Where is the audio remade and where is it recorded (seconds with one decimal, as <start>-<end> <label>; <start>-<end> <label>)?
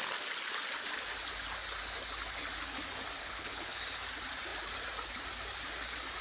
0.0-3.2 recorded; 3.2-3.8 remade; 3.8-6.2 recorded